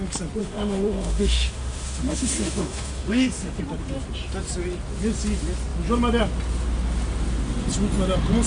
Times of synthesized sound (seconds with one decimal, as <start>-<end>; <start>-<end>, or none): 0.4-3.6